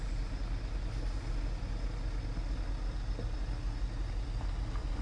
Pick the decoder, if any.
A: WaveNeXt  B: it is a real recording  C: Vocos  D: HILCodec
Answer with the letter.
B